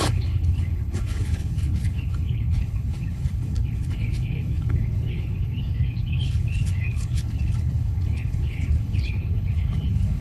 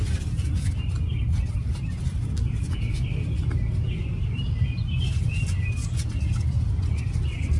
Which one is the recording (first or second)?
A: second